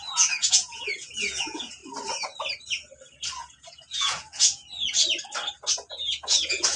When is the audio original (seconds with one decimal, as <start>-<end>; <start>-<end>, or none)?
1.8-3.4; 4.6-5.9